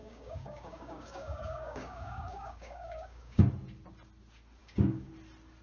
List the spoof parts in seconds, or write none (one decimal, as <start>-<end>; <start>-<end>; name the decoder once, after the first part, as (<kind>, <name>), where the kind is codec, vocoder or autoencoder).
0.0-3.4 (codec, DAC); 4.6-5.1